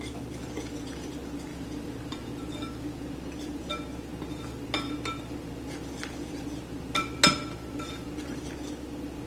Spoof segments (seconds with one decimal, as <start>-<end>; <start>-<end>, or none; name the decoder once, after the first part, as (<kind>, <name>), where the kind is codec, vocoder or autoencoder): 1.5-2.3 (vocoder, BigVGAN v2)